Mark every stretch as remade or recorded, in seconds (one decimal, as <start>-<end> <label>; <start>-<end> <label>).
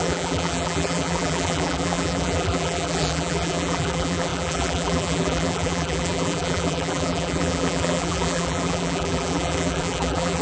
0.0-10.4 remade